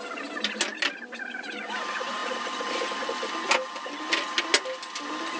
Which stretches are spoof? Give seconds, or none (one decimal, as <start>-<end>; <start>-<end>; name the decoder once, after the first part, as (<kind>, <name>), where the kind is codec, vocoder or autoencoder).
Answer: 2.2-3.3 (vocoder, BigVGAN v2)